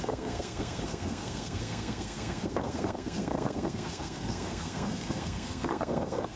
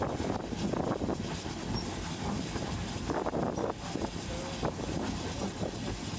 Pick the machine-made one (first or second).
first